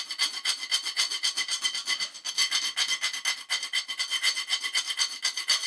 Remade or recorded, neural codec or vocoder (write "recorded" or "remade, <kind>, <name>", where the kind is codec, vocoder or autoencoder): recorded